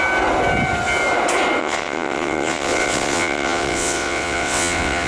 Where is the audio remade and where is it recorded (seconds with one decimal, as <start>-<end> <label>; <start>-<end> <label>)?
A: 0.0-1.6 recorded; 1.6-5.1 remade